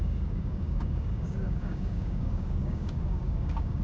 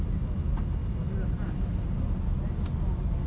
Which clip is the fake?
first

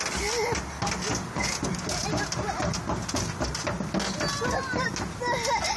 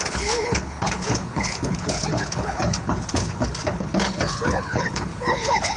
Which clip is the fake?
second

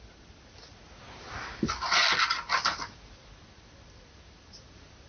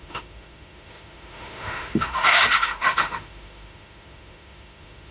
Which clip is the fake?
second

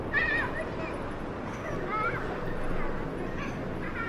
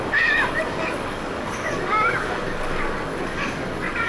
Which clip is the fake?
second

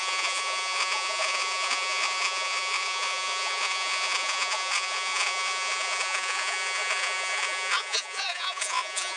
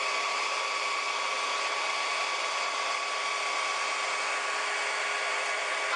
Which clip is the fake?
first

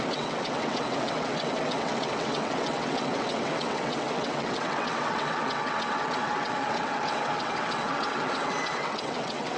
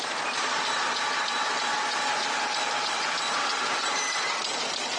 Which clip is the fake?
first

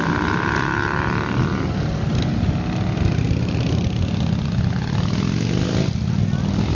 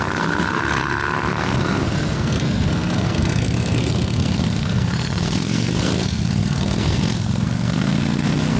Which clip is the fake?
second